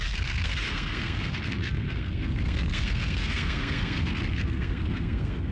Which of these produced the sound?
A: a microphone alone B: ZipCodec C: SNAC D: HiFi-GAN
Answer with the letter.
C